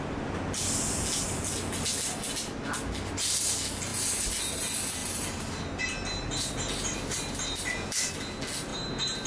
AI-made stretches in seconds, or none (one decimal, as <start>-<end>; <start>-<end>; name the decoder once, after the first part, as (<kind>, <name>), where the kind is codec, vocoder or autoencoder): 5.0-8.1 (vocoder, BigVGAN v2)